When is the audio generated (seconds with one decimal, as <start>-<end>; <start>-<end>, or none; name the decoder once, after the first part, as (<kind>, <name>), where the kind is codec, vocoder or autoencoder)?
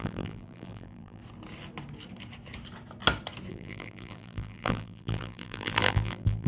0.0-1.2 (vocoder, BigVGAN v2); 3.5-6.5